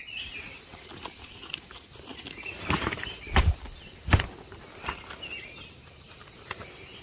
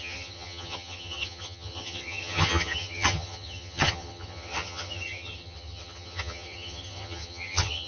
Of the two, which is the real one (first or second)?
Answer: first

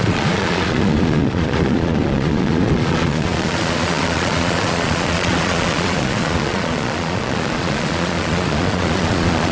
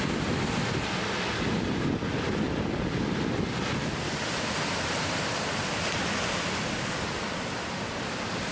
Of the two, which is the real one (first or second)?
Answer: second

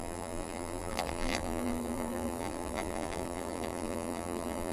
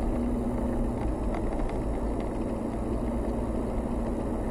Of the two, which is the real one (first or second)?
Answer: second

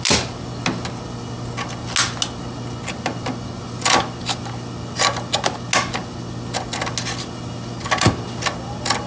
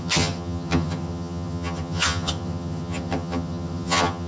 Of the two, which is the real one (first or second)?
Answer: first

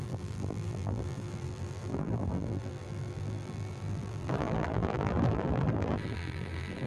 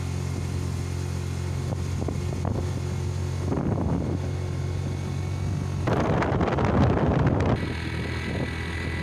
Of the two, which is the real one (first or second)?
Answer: second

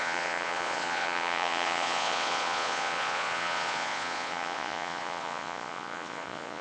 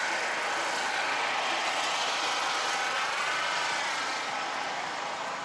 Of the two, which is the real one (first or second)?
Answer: second